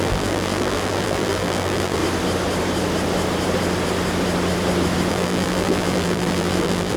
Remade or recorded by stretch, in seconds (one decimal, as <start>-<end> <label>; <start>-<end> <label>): 0.0-2.0 remade; 2.0-5.1 recorded; 5.1-7.0 remade